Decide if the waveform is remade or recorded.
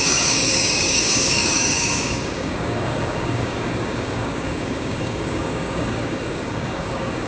remade